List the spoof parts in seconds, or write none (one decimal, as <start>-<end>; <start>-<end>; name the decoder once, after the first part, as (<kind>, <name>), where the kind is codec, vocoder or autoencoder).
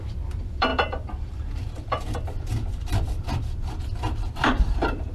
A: 0.0-5.1 (vocoder, BigVGAN v2)